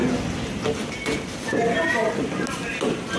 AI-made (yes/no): no